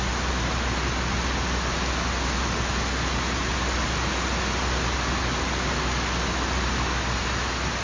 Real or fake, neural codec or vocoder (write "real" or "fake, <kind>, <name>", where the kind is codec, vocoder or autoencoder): real